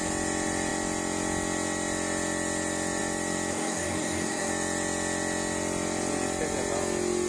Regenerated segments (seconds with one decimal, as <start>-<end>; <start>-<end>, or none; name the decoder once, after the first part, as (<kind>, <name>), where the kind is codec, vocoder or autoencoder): 3.5-4.5 (codec, DAC)